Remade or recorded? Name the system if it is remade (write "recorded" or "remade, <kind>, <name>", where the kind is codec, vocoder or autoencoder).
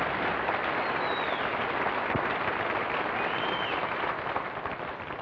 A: recorded